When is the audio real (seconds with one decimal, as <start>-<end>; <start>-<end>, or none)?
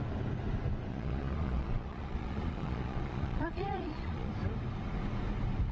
0.0-0.9; 4.3-5.7